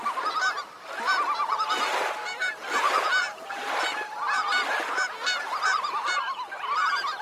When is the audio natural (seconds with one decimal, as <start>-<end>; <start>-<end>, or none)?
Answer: 0.0-7.2